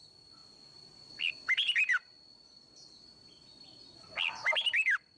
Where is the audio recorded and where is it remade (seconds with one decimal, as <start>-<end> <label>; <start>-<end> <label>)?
0.0-5.2 recorded